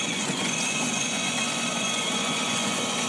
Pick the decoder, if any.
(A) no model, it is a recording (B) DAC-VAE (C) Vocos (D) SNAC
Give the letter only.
C